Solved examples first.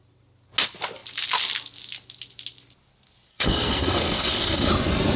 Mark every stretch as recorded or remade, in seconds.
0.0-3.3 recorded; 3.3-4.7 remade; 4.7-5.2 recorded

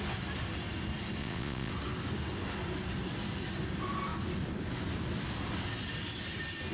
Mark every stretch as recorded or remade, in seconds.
0.0-1.2 recorded; 1.2-1.7 remade; 1.7-6.7 recorded

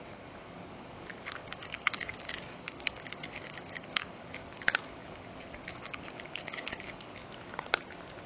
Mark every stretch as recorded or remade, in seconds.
0.0-7.2 remade; 7.2-8.3 recorded

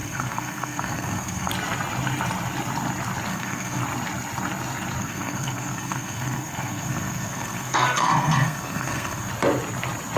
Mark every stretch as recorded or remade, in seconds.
0.0-1.5 remade; 1.5-3.3 recorded; 3.3-3.8 remade; 3.8-5.0 recorded; 5.0-9.3 remade; 9.3-10.2 recorded

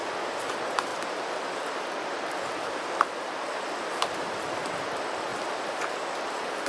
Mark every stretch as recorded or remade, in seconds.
0.0-0.9 recorded; 0.9-4.6 remade; 4.6-5.3 recorded; 5.3-5.9 remade; 5.9-6.7 recorded

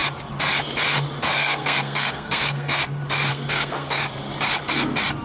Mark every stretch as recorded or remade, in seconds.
0.0-1.3 recorded; 1.3-2.8 remade; 2.8-3.3 recorded; 3.3-4.0 remade; 4.0-5.2 recorded